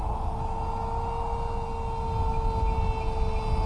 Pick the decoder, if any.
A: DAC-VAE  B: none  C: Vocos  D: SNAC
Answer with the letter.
B